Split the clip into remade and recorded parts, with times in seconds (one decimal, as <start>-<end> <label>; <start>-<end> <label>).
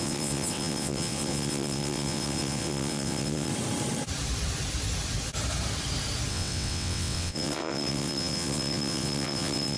0.0-3.5 remade; 3.5-6.3 recorded; 6.3-9.8 remade